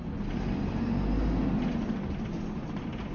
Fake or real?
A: real